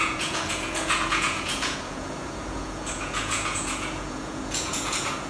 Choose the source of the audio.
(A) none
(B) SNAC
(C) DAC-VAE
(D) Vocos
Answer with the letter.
D